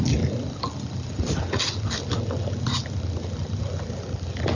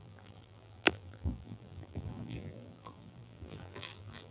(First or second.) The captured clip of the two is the first